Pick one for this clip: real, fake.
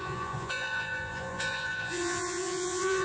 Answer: fake